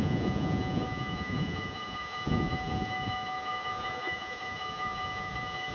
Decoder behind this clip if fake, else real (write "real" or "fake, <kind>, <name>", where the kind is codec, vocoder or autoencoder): fake, vocoder, Vocos